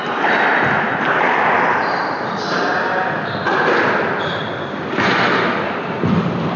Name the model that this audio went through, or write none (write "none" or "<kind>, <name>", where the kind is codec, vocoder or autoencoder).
vocoder, BigVGAN v2